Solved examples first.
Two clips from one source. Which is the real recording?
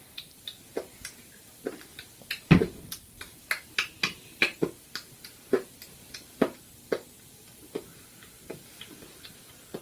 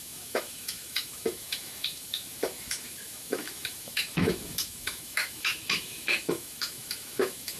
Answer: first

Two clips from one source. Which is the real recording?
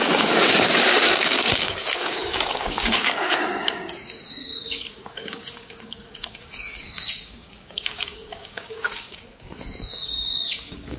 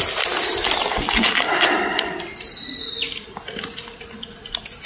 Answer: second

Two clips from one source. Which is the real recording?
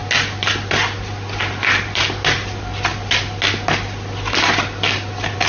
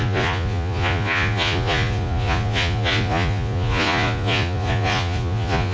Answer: first